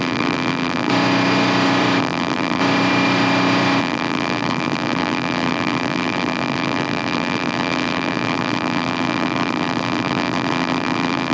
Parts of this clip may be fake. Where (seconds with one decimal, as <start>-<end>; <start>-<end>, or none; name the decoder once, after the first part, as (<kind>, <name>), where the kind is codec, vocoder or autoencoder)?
0.0-0.9 (vocoder, BigVGAN v2); 2.0-2.6; 3.8-11.3